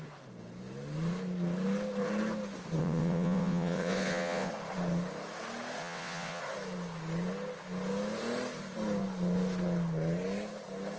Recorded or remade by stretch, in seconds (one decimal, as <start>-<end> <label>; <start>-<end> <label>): 0.0-2.8 recorded; 2.8-4.5 remade; 4.5-5.8 recorded; 5.8-6.4 remade; 6.4-11.0 recorded